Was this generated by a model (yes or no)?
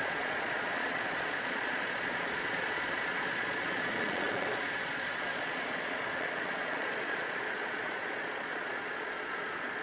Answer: yes